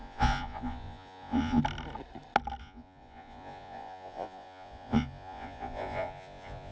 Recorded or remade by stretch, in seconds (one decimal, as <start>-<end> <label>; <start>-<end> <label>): 0.0-1.6 remade; 1.6-2.6 recorded; 2.6-6.7 remade